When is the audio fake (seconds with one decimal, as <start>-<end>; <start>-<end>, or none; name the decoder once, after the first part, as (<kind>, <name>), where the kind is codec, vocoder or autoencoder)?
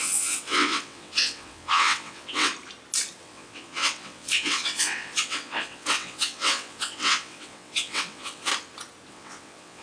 0.0-2.5 (vocoder, WaveNeXt); 3.2-8.5; 9.1-9.8